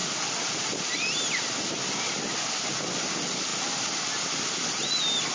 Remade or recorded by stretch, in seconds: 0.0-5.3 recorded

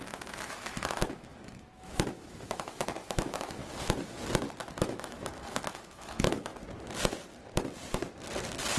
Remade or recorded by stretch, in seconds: 0.0-3.6 remade; 3.6-4.8 recorded; 4.8-6.5 remade; 6.5-8.8 recorded

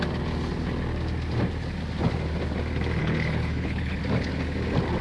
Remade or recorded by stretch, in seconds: 0.0-3.0 recorded; 3.0-4.0 remade; 4.0-5.0 recorded

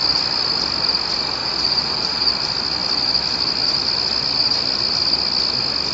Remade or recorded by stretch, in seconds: 0.0-1.4 recorded; 1.4-2.3 remade; 2.3-5.9 recorded

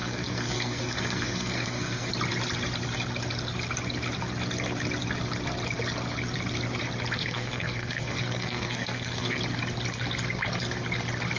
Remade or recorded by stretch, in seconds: 0.0-2.1 remade; 2.1-7.2 recorded; 7.2-9.4 remade; 9.4-11.4 recorded